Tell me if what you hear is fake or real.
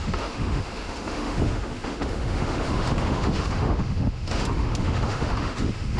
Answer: fake